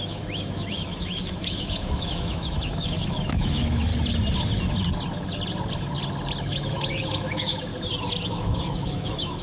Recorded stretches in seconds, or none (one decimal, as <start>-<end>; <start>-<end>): 3.9-6.4; 7.7-8.3